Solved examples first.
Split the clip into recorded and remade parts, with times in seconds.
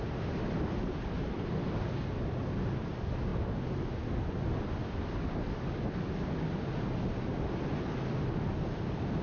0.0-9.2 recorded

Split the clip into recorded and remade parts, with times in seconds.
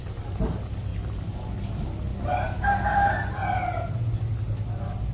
0.0-5.1 recorded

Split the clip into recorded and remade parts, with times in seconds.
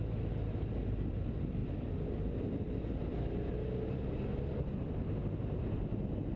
0.0-6.4 recorded